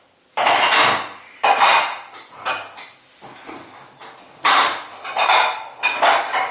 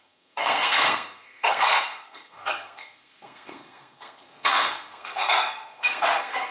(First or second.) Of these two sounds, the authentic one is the first